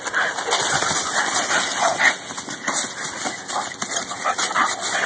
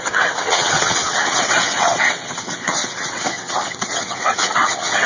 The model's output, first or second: second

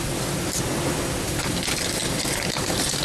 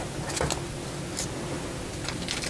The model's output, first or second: first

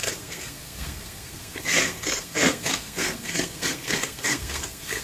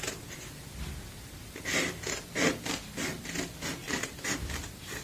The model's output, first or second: first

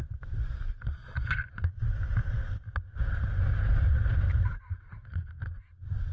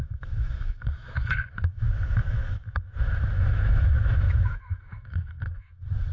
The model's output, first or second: second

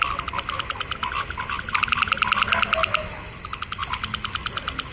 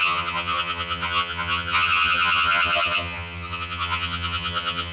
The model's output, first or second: second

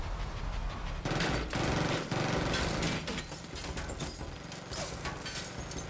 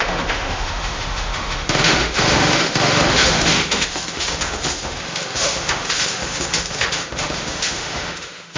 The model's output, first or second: second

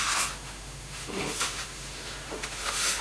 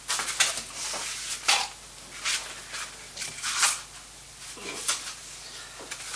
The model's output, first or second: first